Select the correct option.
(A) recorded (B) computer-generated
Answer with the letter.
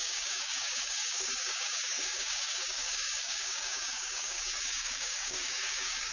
B